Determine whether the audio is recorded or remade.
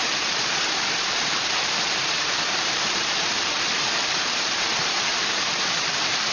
remade